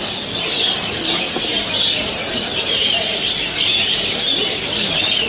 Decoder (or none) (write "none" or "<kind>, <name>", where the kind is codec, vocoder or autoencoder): none